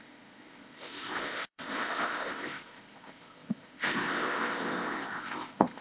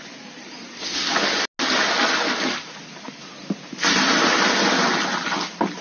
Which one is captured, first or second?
second